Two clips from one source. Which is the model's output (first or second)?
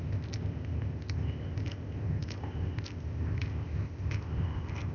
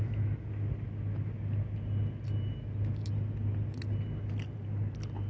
first